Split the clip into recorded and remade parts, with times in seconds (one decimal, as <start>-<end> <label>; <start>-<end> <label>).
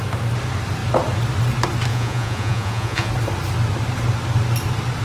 0.0-1.9 recorded; 1.9-3.1 remade; 3.1-5.0 recorded